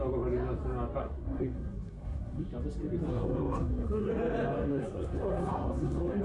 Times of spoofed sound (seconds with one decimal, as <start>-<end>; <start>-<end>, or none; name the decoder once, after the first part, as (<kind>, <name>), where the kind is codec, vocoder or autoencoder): 1.0-2.5 (codec, SNAC); 3.1-4.1; 4.7-6.2